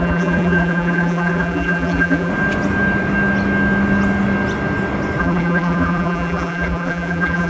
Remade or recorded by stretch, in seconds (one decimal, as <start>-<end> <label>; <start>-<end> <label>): 0.0-2.3 remade; 2.3-5.2 recorded; 5.2-7.5 remade